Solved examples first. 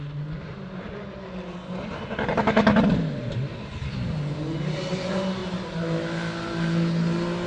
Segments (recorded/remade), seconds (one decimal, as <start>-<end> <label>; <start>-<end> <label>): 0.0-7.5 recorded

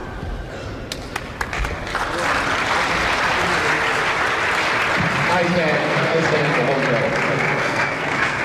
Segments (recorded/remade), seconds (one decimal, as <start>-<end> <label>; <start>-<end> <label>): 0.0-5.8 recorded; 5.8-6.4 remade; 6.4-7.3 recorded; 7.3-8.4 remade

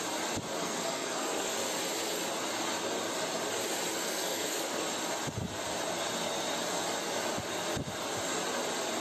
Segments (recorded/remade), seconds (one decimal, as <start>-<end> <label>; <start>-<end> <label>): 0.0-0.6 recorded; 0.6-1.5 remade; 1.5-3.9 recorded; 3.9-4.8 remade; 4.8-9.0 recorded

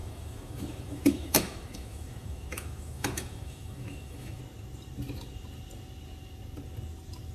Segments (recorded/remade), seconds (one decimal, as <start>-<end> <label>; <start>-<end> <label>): 0.0-4.4 remade; 4.4-7.3 recorded